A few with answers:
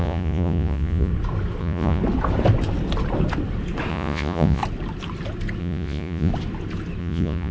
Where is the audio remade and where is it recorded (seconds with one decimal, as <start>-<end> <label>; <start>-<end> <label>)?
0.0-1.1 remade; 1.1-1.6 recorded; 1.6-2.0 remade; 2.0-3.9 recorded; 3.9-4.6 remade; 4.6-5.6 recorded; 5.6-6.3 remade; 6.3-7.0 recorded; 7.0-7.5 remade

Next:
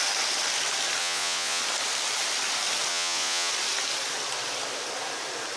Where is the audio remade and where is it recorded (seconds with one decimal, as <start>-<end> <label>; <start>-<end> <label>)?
0.0-1.0 recorded; 1.0-1.6 remade; 1.6-2.9 recorded; 2.9-3.5 remade; 3.5-5.6 recorded

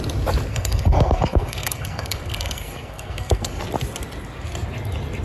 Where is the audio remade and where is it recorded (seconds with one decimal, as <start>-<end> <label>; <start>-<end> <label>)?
0.0-0.5 recorded; 0.5-3.6 remade; 3.6-5.2 recorded